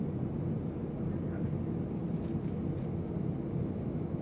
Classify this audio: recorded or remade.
recorded